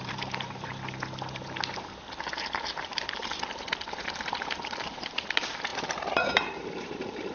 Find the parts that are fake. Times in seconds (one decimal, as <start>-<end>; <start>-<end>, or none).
0.0-0.7; 4.7-7.3